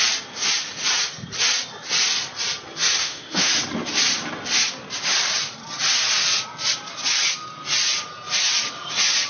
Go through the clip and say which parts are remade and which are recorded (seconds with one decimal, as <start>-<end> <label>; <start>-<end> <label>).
0.0-3.0 recorded; 3.0-3.5 remade; 3.5-9.3 recorded